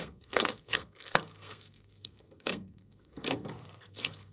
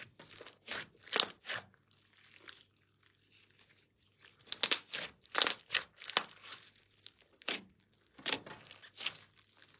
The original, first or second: second